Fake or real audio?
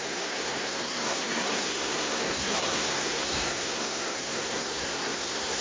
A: fake